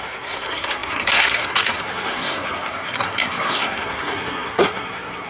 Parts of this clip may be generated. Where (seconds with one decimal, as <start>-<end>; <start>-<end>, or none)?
0.0-5.3